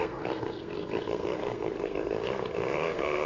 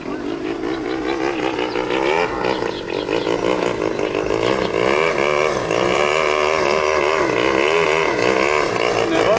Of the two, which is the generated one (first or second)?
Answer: first